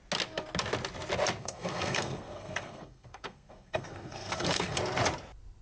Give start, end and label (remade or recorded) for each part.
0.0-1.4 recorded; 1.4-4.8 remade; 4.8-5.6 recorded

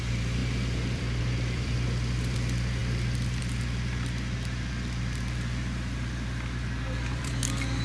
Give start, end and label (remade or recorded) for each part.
0.0-7.8 remade

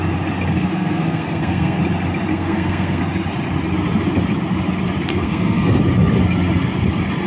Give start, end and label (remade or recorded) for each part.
0.0-0.5 recorded; 0.5-1.8 remade; 1.8-2.3 recorded; 2.3-3.0 remade; 3.0-5.1 recorded; 5.1-5.8 remade; 5.8-7.3 recorded